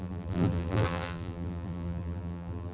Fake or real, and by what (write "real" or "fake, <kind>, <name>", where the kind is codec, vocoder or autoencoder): fake, vocoder, BigVGAN v2